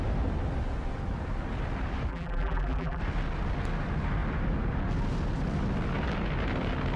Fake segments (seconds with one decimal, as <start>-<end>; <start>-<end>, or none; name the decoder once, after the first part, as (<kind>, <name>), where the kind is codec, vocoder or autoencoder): 2.1-3.0 (vocoder, BigVGAN v2)